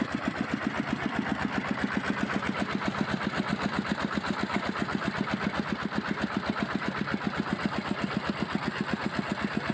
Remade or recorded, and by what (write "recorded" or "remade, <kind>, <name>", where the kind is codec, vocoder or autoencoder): recorded